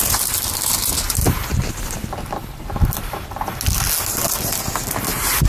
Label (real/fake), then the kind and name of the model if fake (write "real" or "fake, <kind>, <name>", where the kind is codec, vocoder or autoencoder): real